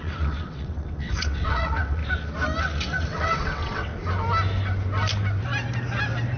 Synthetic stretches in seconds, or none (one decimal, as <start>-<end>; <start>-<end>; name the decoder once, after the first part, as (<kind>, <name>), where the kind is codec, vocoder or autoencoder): 0.0-2.0 (vocoder, WaveNeXt); 2.6-3.9